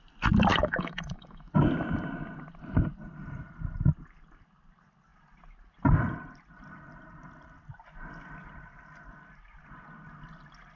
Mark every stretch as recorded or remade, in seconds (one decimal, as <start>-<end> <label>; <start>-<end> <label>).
0.0-0.5 recorded; 0.5-1.5 remade; 1.5-10.8 recorded